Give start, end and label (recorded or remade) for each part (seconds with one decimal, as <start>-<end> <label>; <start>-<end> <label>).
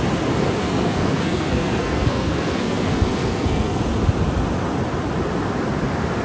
0.0-0.6 recorded; 0.6-3.8 remade; 3.8-6.2 recorded